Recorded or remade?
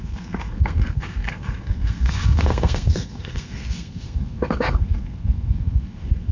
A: remade